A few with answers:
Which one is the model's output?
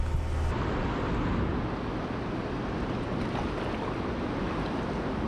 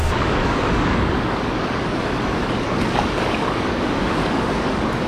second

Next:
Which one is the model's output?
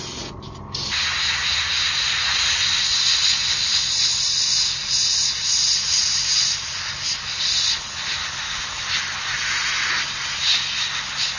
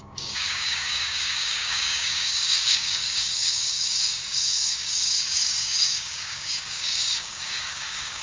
second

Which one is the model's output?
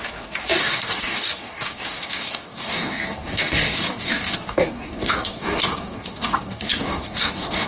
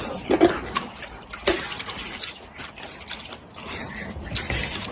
first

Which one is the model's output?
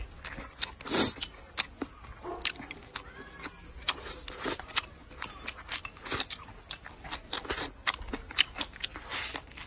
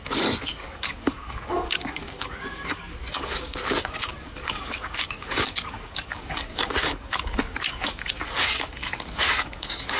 second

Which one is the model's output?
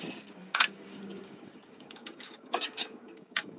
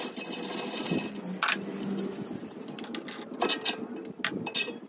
first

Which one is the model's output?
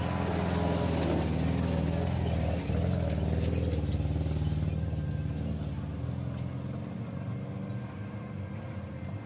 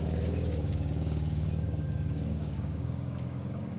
second